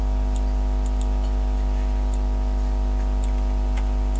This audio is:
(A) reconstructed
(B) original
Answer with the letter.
B